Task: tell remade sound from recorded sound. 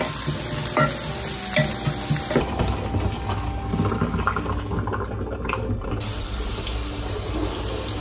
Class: recorded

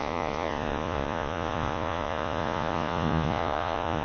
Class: remade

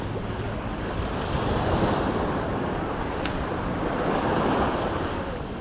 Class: recorded